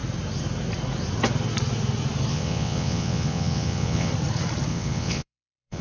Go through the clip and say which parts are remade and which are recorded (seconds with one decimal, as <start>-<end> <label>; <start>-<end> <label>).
0.0-2.3 recorded; 2.3-4.1 remade; 4.1-4.7 recorded; 4.7-5.8 remade